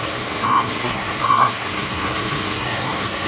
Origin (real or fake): fake